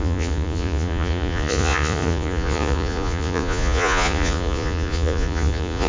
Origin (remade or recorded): remade